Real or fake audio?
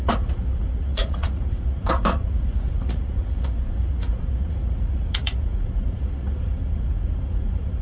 fake